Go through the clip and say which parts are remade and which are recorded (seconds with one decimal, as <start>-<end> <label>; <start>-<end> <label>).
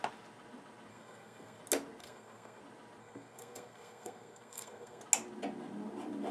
0.0-0.9 recorded; 0.9-1.6 remade; 1.6-2.0 recorded; 2.0-2.6 remade; 2.6-3.0 recorded; 3.0-5.0 remade; 5.0-6.3 recorded